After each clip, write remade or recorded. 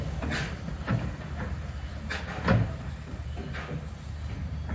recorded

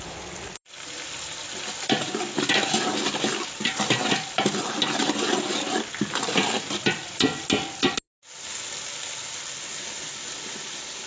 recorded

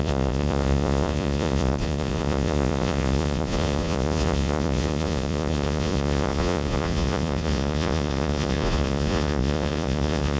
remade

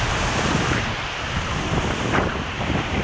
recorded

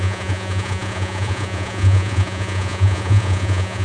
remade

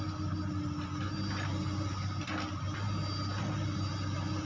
recorded